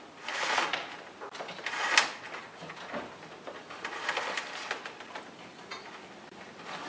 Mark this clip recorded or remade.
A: recorded